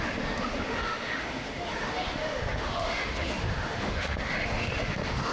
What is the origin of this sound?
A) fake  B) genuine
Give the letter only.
A